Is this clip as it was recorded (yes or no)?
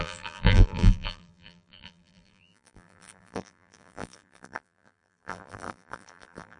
no